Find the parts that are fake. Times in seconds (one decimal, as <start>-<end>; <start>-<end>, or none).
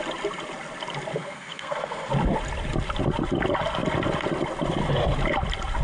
1.1-2.1